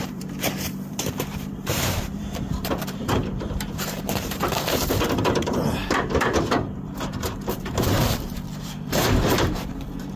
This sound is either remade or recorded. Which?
remade